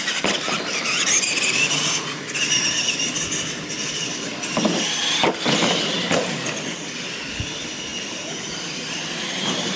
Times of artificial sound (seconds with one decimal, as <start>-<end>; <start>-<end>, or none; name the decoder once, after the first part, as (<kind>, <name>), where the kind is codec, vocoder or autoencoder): none